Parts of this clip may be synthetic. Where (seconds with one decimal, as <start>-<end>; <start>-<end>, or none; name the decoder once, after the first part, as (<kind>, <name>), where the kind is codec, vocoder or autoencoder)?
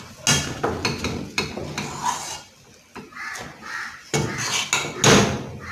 none